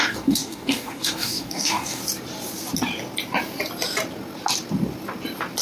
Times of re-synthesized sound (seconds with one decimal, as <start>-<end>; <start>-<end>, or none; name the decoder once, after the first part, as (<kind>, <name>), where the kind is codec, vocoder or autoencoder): 0.0-2.0 (codec, DAC)